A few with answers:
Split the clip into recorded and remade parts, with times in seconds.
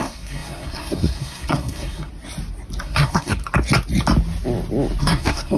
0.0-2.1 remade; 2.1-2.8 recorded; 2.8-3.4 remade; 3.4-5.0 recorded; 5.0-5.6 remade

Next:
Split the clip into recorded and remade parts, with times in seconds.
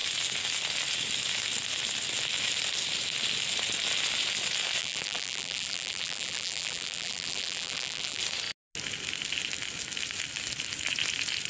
0.0-4.8 recorded; 4.8-8.2 remade; 8.2-11.5 recorded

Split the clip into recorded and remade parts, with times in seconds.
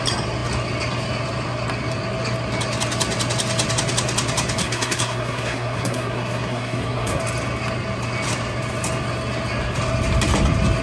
0.0-4.6 recorded; 4.6-7.2 remade; 7.2-10.8 recorded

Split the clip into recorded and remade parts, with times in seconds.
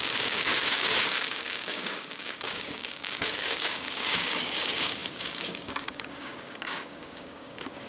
0.0-7.9 remade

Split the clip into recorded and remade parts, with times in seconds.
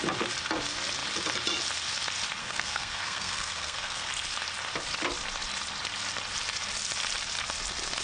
0.0-2.4 recorded; 2.4-4.1 remade; 4.1-8.0 recorded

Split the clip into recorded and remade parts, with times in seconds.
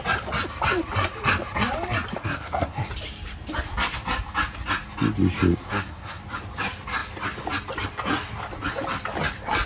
0.0-2.2 recorded; 2.2-2.9 remade; 2.9-5.6 recorded; 5.6-6.2 remade; 6.2-9.7 recorded